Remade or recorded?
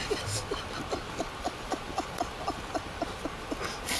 recorded